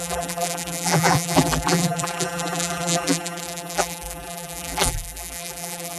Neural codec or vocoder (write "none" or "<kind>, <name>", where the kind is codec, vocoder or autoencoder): vocoder, BigVGAN v2